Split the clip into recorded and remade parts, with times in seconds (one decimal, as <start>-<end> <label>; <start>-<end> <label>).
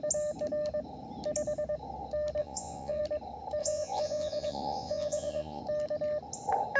0.0-2.4 recorded; 2.4-3.0 remade; 3.0-3.6 recorded; 3.6-5.6 remade; 5.6-6.8 recorded